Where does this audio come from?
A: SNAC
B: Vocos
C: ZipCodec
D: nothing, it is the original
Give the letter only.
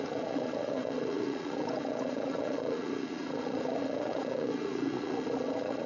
B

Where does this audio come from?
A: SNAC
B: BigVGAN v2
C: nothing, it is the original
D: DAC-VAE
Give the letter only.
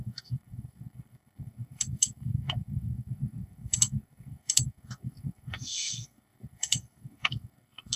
A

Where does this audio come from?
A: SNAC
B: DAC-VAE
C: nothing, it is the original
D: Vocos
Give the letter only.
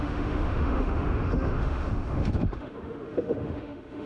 B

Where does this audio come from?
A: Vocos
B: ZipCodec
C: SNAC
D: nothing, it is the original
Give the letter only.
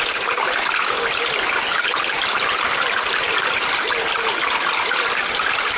D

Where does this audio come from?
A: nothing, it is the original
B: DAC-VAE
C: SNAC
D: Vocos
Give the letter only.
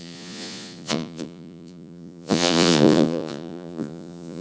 D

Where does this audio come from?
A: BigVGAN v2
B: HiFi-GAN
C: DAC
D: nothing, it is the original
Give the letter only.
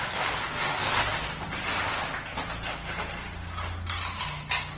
D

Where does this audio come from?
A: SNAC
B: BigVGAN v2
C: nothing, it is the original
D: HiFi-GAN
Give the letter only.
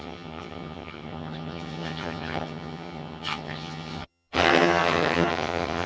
D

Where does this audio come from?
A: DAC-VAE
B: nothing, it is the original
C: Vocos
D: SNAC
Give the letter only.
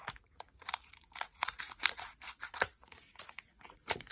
C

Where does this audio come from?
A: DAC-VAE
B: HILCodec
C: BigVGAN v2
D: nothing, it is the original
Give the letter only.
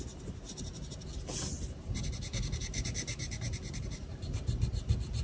D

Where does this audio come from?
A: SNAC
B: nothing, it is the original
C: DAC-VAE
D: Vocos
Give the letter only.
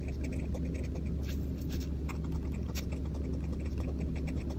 B